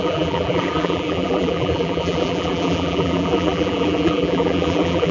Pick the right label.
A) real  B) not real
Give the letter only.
B